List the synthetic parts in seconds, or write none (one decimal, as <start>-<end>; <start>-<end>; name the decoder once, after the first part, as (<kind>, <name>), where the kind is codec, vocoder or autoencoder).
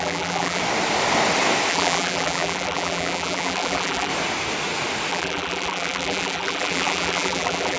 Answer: 0.0-0.6 (vocoder, BigVGAN v2); 1.7-4.1; 5.1-7.8